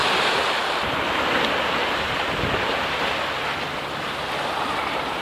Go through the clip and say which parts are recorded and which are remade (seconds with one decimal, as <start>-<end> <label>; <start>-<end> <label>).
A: 0.0-1.4 remade; 1.4-5.2 recorded